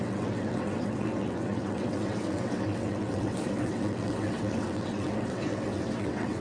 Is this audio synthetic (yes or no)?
yes